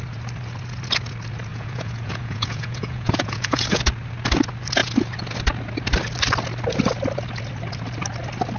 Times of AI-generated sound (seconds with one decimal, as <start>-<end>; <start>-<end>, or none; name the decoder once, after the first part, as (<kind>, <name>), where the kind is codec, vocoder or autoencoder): 1.5-3.8 (vocoder, Vocos)